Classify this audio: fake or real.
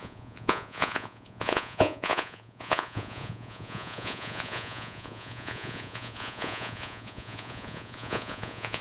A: fake